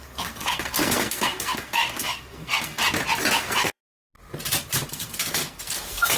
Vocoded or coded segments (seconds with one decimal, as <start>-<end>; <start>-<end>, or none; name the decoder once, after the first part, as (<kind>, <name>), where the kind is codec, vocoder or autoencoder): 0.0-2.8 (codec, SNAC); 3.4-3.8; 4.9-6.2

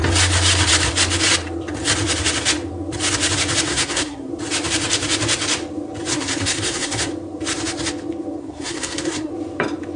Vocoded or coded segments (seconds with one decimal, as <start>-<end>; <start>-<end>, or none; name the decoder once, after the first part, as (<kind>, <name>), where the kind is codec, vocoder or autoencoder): 3.7-4.3 (codec, SNAC); 6.1-7.1; 8.4-9.3

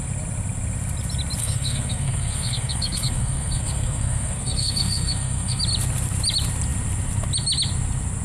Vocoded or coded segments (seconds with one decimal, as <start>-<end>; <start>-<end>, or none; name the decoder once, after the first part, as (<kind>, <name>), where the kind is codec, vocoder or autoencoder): 1.4-5.6 (codec, SNAC)

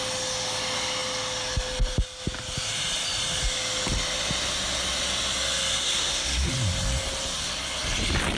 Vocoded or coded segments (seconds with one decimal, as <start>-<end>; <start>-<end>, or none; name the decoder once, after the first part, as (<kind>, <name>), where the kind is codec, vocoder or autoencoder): 5.8-6.5 (codec, SNAC)

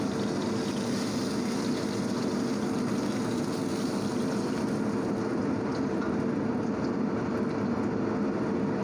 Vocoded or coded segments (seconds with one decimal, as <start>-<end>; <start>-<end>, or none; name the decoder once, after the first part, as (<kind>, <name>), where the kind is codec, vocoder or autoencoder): none